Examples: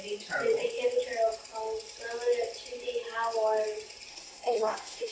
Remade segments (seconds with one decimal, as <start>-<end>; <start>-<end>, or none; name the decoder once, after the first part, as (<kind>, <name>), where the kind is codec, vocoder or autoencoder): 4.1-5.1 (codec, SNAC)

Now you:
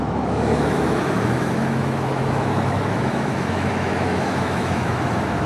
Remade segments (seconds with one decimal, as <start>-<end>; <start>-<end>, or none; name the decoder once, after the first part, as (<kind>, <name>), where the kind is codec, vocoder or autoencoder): 0.0-5.5 (autoencoder, DAC-VAE)

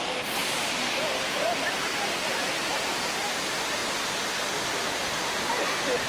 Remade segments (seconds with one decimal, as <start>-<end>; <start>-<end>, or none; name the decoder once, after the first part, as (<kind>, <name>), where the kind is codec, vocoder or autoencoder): 0.4-2.2 (vocoder, BigVGAN v2)

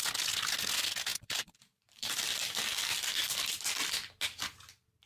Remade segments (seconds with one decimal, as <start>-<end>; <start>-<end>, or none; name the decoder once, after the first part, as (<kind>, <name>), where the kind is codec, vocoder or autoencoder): 1.1-2.2 (vocoder, BigVGAN v2)

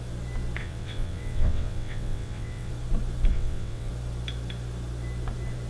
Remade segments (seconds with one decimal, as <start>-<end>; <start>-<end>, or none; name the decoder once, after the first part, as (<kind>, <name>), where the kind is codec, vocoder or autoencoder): 0.6-2.7 (vocoder, WaveNeXt); 3.3-3.9

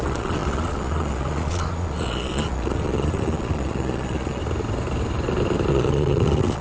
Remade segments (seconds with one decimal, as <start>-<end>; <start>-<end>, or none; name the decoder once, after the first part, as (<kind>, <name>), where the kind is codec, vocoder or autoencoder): 0.0-4.4 (vocoder, Vocos); 5.7-6.6